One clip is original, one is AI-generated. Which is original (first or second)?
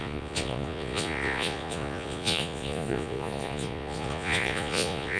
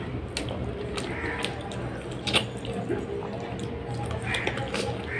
second